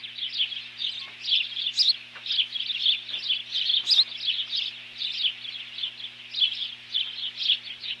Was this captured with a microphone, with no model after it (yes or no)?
yes